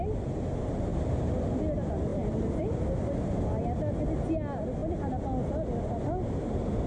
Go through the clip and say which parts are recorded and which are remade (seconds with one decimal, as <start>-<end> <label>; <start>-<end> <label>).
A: 0.0-0.9 recorded; 0.9-1.6 remade; 1.6-2.1 recorded; 2.1-3.1 remade; 3.1-6.9 recorded